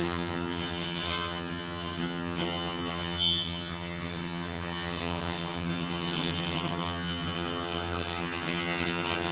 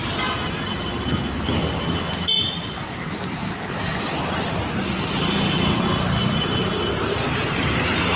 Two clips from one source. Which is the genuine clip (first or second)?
second